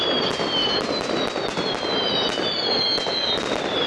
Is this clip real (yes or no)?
yes